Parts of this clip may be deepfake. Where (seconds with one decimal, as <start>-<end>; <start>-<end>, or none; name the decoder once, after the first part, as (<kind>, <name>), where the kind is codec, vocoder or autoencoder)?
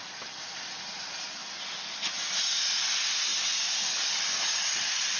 none